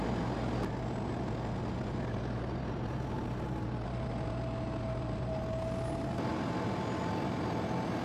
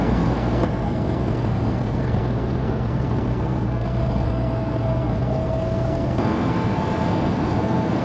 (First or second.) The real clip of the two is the first